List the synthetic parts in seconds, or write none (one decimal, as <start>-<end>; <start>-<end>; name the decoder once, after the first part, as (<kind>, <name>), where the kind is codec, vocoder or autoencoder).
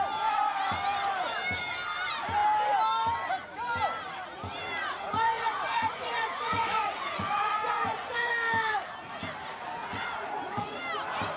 4.8-8.3 (vocoder, Vocos); 9.8-10.8